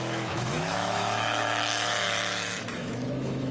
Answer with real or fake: fake